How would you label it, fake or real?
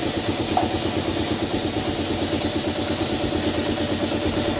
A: real